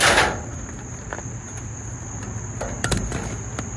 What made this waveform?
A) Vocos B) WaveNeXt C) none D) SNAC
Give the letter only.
C